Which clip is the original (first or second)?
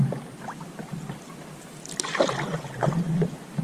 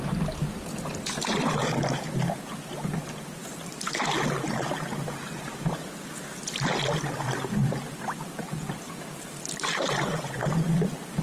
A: second